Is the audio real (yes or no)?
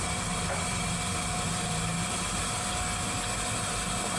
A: yes